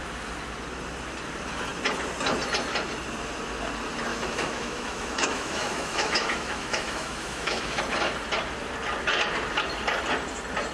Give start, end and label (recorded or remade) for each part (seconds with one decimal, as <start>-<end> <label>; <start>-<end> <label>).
0.0-4.1 recorded; 4.1-7.8 remade; 7.8-10.7 recorded

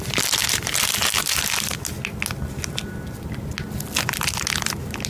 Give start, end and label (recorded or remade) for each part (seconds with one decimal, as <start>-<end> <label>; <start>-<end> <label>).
0.0-5.1 recorded

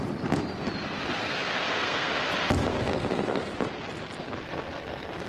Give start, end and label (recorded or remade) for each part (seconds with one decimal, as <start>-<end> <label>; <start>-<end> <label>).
0.0-1.2 recorded; 1.2-2.1 remade; 2.1-2.7 recorded; 2.7-3.5 remade; 3.5-4.2 recorded; 4.2-5.3 remade

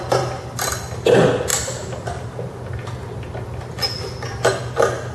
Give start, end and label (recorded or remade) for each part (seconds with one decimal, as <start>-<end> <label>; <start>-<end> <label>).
0.0-5.1 recorded

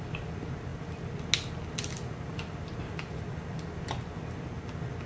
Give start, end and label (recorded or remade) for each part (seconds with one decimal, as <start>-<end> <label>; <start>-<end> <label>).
0.0-5.1 recorded

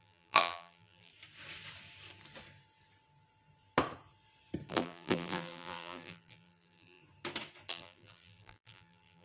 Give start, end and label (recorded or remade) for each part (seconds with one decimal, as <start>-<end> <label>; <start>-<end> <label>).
0.0-1.1 remade; 1.1-4.7 recorded; 4.7-7.0 remade; 7.0-7.7 recorded; 7.7-9.2 remade

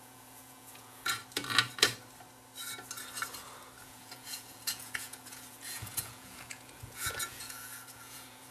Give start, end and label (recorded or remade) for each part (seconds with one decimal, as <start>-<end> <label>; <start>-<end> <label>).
0.0-1.2 remade; 1.2-3.8 recorded; 3.8-8.5 remade